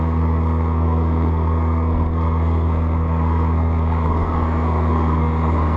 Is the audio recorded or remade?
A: remade